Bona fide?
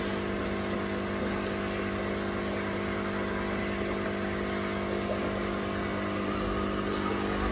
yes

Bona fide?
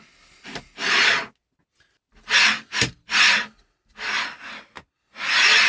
yes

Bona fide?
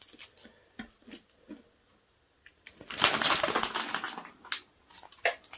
yes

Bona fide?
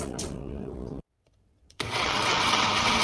no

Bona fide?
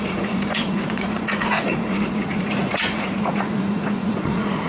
no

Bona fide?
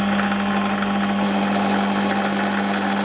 yes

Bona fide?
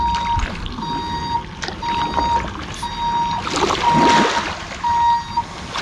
yes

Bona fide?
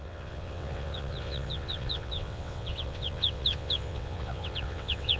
no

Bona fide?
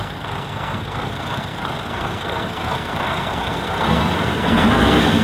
no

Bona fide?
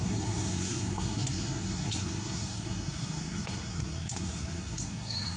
no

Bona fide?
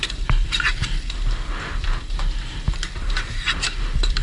no